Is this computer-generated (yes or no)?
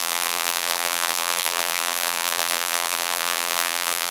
yes